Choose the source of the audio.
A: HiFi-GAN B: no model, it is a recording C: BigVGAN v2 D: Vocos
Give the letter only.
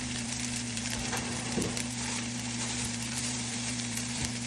C